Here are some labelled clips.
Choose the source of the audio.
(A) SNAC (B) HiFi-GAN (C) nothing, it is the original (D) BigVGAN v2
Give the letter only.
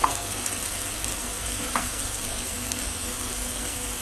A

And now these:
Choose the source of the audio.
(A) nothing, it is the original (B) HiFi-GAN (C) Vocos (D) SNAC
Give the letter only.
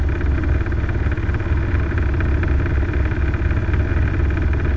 A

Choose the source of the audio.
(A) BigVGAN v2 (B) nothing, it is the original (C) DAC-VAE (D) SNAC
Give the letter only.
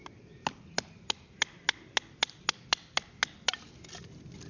B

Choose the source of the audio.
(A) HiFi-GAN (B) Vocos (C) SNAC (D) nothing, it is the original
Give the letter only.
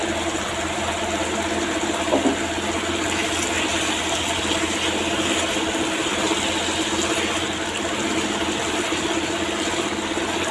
D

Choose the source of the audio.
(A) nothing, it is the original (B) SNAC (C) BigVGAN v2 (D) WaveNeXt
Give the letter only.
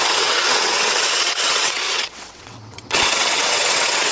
D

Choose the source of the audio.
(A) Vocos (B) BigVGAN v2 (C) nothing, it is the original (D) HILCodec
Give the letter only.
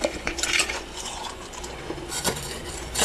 A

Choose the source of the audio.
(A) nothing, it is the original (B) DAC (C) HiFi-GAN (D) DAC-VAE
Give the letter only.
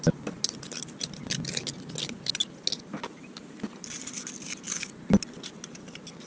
A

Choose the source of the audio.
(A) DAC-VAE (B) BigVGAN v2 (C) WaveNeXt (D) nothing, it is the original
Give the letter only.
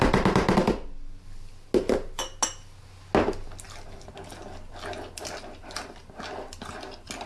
D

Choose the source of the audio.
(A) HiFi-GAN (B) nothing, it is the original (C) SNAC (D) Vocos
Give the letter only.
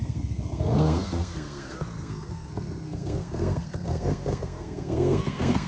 C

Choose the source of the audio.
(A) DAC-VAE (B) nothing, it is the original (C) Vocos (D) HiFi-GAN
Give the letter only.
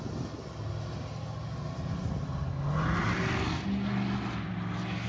B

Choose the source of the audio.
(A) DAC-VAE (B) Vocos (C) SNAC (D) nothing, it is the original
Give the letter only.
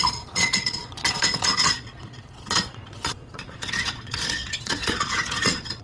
B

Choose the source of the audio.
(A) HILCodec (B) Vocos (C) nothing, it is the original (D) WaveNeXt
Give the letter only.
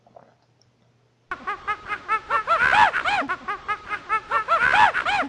C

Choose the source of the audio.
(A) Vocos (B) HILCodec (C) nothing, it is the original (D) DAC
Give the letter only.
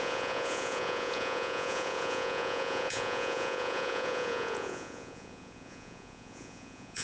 A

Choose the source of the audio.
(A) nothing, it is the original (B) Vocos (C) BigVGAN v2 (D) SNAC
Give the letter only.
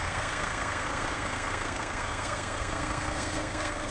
D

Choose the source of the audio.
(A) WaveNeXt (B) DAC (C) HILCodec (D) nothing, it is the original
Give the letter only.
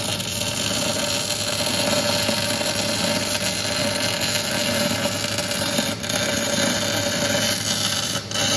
D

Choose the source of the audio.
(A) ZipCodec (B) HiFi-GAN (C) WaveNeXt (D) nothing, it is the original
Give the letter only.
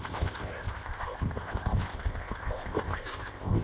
A